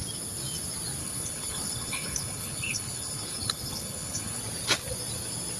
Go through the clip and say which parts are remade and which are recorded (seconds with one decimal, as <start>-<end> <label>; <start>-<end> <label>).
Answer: 0.0-1.0 recorded; 1.0-4.4 remade; 4.4-5.6 recorded